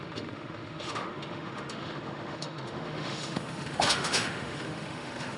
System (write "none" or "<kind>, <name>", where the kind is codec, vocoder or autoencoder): autoencoder, DAC-VAE